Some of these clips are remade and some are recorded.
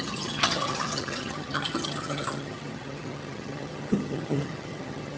remade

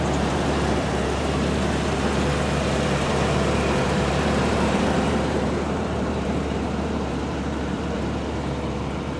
remade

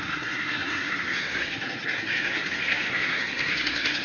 remade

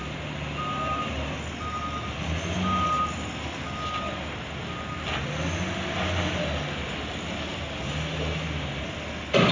recorded